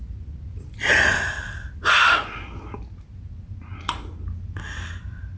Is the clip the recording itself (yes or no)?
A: yes